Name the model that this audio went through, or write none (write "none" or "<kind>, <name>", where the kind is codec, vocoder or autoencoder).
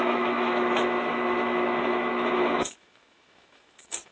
autoencoder, DAC-VAE